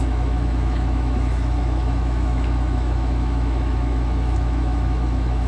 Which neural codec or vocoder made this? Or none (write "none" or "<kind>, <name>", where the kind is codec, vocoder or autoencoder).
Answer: autoencoder, DAC-VAE